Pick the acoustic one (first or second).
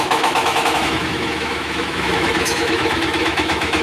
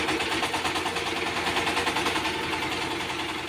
second